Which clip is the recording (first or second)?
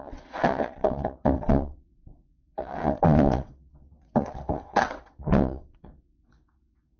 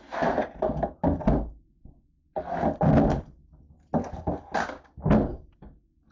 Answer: second